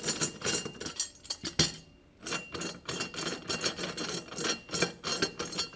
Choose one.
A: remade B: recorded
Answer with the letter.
B